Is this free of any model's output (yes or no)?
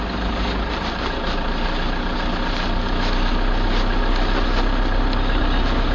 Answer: yes